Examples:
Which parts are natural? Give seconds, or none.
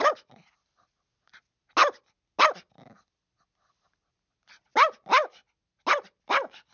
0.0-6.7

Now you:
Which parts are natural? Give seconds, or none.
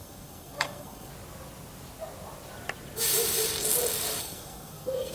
1.1-4.2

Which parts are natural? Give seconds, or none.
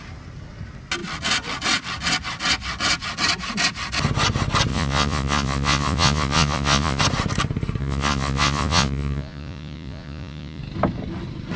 0.0-4.7; 7.0-7.8; 10.6-11.6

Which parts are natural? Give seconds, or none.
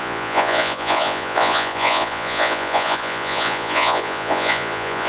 none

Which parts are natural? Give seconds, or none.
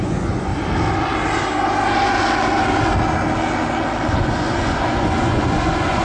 0.5-4.1